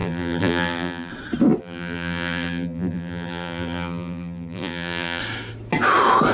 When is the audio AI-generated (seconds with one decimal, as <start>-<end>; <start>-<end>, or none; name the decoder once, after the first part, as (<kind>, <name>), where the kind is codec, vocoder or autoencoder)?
0.0-1.1 (vocoder, BigVGAN v2); 1.6-5.2